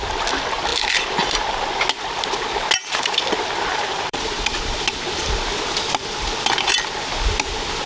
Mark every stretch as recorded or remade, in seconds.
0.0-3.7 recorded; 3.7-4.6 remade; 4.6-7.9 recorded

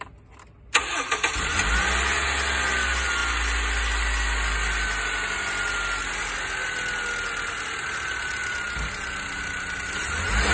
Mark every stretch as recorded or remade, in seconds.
0.0-10.5 recorded

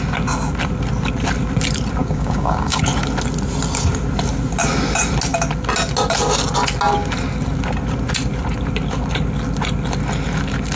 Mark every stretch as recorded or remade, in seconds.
0.0-2.0 recorded; 2.0-2.8 remade; 2.8-10.8 recorded

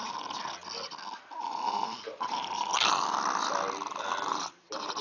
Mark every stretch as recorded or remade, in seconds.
0.0-4.3 recorded; 4.3-5.0 remade